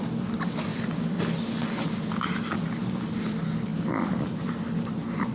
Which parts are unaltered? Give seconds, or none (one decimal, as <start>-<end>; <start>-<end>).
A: 0.0-0.7; 1.2-3.7; 4.5-5.3

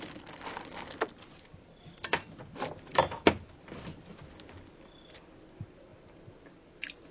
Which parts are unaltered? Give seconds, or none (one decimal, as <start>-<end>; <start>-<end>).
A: 0.0-7.1

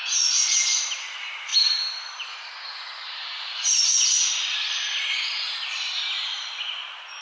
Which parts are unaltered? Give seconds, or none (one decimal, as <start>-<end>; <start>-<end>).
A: 0.0-1.5; 3.6-7.2

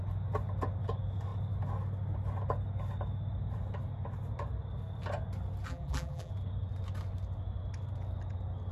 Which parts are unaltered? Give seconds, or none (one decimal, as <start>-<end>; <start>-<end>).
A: 0.0-5.7; 6.3-8.7

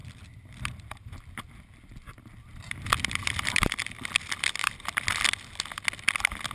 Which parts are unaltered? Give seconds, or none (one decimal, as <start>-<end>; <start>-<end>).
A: 2.5-3.2; 3.8-4.6; 5.6-6.5

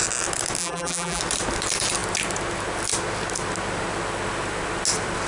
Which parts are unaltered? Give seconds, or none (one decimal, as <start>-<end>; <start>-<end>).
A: 0.0-0.6; 1.2-5.3

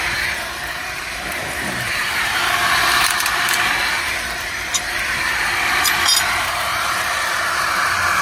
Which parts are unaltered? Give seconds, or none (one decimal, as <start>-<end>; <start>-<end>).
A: 0.0-0.8; 3.7-6.7; 7.2-8.2

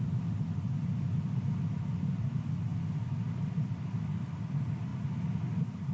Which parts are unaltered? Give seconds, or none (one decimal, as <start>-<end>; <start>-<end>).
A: 2.7-4.5; 4.9-5.9